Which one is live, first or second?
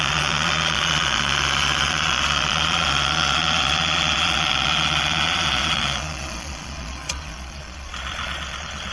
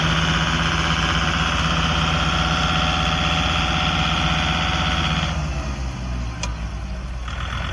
second